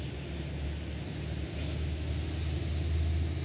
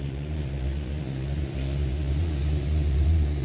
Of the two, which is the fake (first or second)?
second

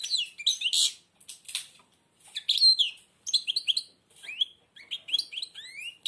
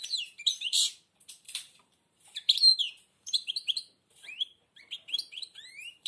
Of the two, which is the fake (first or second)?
second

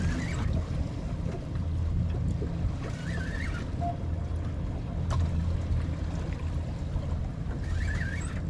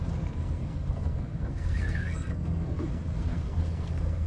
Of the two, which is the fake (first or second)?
second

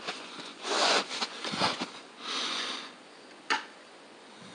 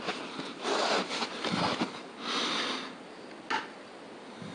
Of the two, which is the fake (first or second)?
first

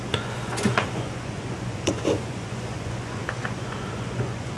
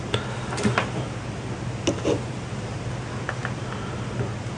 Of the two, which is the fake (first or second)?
first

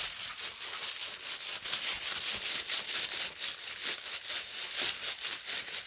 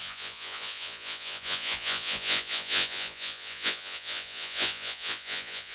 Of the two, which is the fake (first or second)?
second